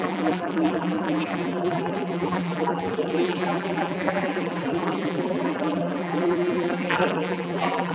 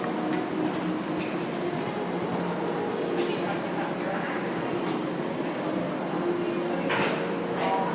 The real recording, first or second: second